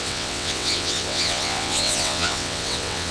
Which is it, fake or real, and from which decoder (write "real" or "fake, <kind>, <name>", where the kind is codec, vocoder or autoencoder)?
fake, vocoder, WaveNeXt